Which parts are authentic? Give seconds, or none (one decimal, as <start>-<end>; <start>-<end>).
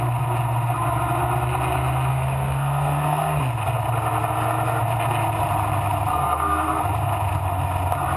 0.0-2.1; 3.4-6.1; 6.8-8.2